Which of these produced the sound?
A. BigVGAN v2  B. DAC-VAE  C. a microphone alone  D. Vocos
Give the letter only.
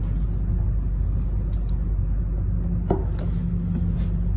C